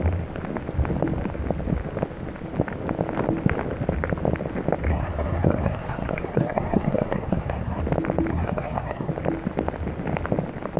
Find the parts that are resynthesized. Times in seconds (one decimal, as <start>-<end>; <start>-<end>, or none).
4.9-7.8; 8.3-9.1